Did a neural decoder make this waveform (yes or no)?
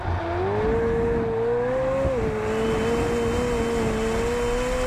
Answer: no